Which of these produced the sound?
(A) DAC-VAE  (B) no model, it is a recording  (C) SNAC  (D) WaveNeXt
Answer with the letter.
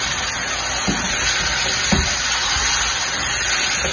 B